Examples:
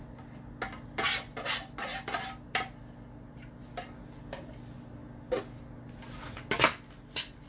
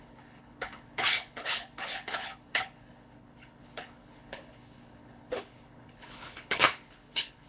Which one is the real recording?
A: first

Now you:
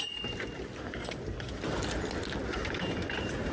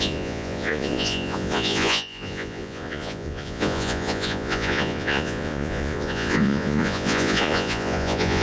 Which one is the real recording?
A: first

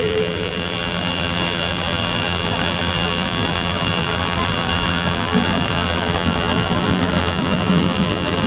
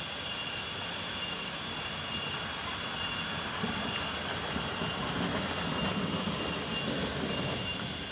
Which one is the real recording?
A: second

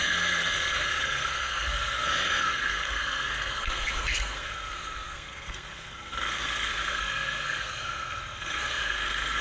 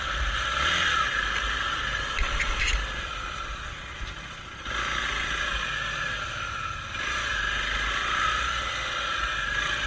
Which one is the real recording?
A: second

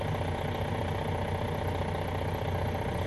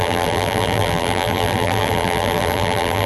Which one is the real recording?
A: first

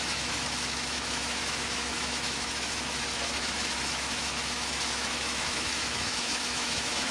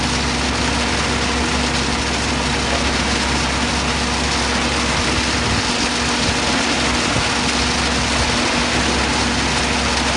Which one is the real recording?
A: second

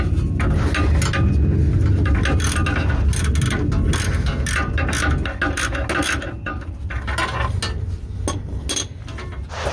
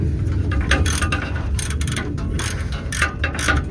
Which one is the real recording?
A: first